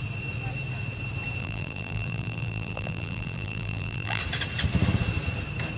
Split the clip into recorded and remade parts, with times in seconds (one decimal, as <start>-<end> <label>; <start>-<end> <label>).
0.0-1.4 recorded; 1.4-4.2 remade; 4.2-5.8 recorded